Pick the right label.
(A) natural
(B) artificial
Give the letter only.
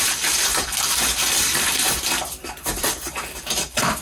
B